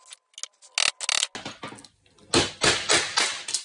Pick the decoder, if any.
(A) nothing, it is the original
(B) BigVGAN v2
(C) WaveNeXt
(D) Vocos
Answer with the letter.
A